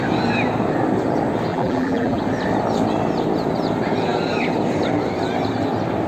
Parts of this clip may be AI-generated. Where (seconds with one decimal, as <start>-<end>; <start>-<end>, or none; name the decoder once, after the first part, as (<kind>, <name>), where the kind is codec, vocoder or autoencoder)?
1.5-2.2 (vocoder, BigVGAN v2)